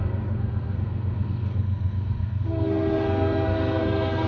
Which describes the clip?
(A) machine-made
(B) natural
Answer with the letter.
A